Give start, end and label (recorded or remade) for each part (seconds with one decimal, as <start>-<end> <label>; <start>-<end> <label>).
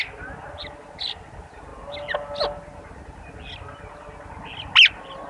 0.0-5.3 recorded